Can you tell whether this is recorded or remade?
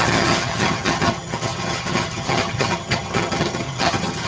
remade